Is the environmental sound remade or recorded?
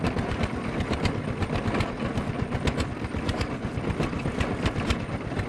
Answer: recorded